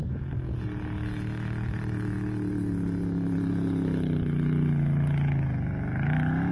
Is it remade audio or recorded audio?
recorded